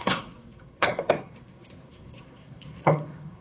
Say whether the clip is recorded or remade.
remade